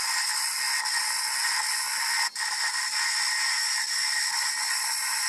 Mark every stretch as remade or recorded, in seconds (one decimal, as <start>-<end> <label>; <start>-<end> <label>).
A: 0.0-5.3 recorded